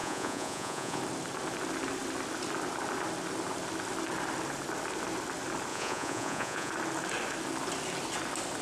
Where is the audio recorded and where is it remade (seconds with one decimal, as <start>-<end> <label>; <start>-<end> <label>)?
0.0-1.0 remade; 1.0-5.7 recorded; 5.7-6.7 remade; 6.7-8.6 recorded